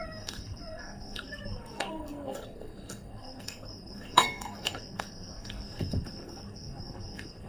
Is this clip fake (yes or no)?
yes